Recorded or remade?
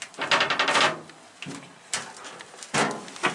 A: recorded